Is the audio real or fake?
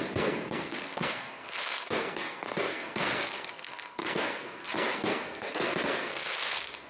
fake